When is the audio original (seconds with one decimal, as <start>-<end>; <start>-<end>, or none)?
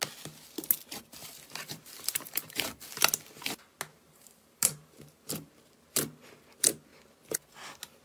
0.0-1.2; 3.0-3.9; 5.5-8.0